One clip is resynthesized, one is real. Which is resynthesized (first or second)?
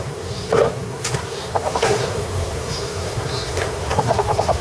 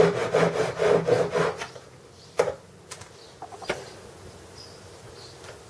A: first